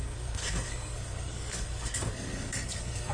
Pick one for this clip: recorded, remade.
remade